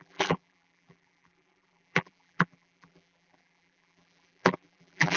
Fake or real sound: fake